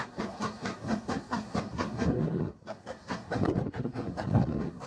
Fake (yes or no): yes